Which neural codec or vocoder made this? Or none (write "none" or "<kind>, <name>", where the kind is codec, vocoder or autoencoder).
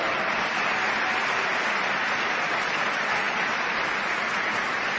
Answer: none